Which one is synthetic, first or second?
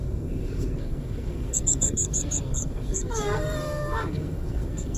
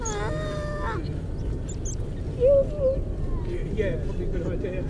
first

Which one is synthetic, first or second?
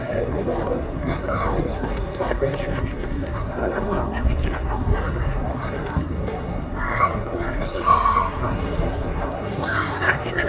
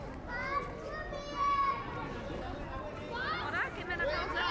first